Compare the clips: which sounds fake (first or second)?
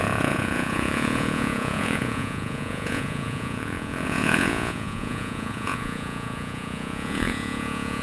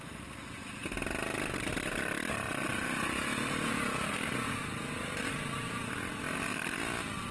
first